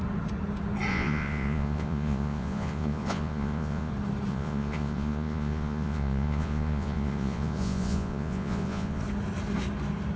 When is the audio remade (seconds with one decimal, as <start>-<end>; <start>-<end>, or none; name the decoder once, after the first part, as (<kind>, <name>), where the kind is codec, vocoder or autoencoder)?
0.9-3.9 (vocoder, Vocos); 4.3-9.0